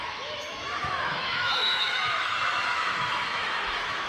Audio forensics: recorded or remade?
remade